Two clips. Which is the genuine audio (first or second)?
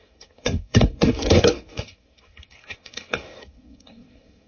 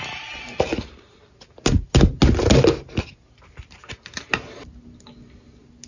second